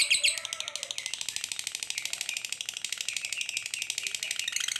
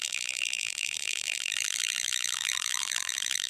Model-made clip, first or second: second